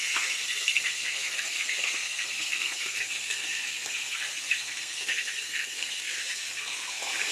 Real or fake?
fake